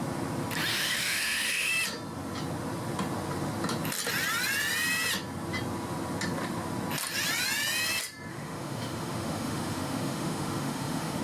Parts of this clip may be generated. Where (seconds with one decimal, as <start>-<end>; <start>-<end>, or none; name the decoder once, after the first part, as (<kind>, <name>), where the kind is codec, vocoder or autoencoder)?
0.7-1.7 (autoencoder, DAC-VAE); 8.3-11.2